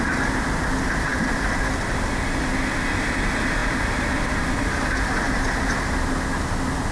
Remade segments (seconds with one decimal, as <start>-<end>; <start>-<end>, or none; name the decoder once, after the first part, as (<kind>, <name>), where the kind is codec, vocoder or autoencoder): none